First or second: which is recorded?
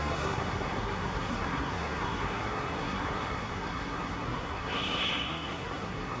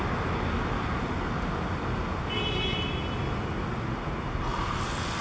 second